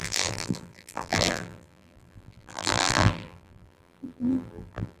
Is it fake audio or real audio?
fake